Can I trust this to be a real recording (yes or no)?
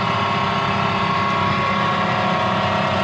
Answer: yes